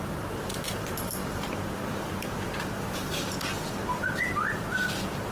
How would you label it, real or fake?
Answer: fake